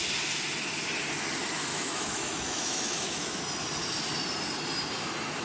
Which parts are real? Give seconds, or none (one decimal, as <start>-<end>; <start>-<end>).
0.0-1.7; 3.4-5.4